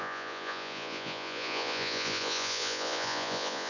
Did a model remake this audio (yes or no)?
yes